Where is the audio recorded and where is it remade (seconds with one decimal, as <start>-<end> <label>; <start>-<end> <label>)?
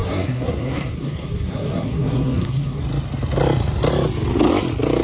0.0-2.8 remade; 2.8-5.0 recorded